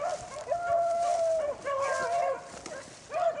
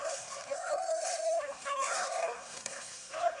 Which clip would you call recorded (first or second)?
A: first